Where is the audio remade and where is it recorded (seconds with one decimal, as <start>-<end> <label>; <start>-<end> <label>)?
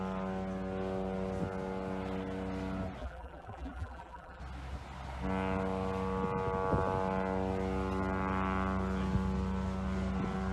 0.0-3.0 recorded; 3.0-4.4 remade; 4.4-10.5 recorded